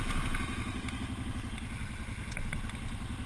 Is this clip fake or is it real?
real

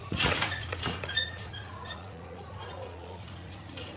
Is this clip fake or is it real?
fake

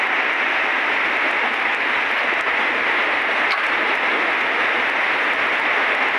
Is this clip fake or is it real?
real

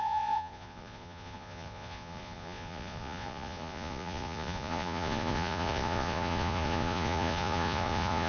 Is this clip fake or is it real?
fake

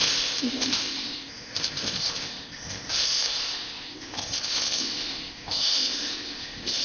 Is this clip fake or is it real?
fake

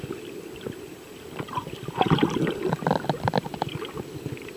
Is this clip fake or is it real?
real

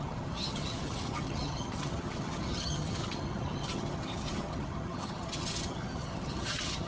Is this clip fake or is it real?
fake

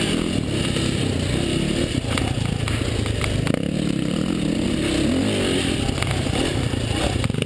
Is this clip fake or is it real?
real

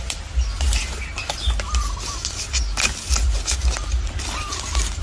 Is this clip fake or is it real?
real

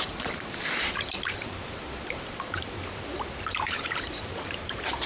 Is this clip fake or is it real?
fake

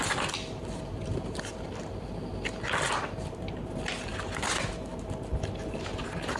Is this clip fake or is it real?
real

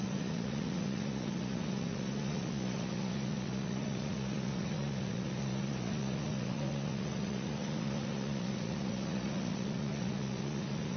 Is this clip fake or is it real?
fake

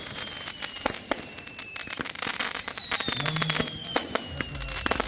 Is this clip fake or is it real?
real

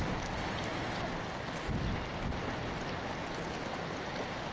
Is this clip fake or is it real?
real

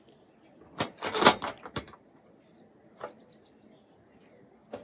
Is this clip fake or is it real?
real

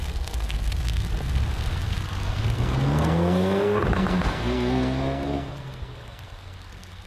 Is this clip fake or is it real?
fake